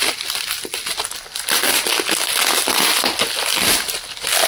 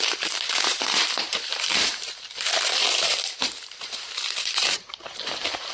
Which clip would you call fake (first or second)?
second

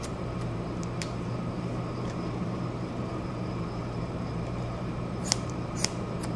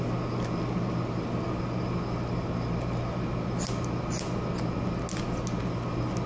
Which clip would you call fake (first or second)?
first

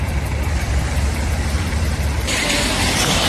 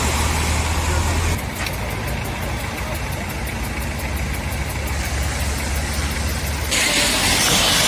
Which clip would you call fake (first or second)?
first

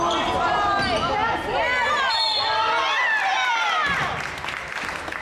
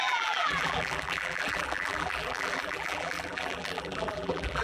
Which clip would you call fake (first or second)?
second